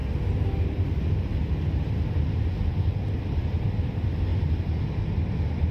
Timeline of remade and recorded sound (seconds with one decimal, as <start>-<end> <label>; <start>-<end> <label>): 0.0-5.7 recorded